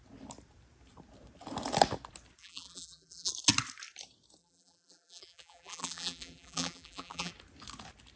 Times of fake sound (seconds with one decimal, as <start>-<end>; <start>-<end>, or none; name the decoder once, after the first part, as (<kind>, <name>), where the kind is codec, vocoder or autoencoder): 2.4-3.3 (vocoder, BigVGAN v2); 4.4-7.3